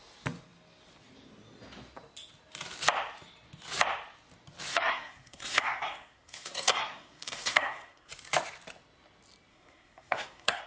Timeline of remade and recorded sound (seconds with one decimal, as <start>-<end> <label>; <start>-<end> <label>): 0.0-4.7 recorded; 4.7-8.1 remade; 8.1-9.5 recorded; 9.5-10.7 remade